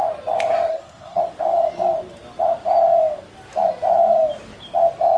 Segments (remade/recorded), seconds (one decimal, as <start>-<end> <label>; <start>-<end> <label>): 0.0-0.7 recorded; 0.7-1.2 remade; 1.2-5.2 recorded